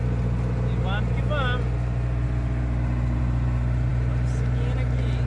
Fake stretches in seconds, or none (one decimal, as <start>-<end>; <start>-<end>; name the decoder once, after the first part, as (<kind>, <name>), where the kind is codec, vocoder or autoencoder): none